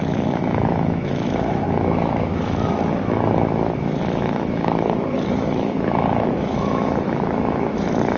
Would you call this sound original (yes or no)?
no